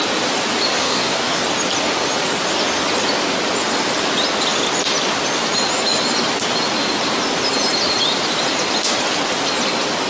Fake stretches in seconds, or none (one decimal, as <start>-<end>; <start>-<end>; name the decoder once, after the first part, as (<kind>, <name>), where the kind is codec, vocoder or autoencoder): 0.8-1.4 (codec, SNAC)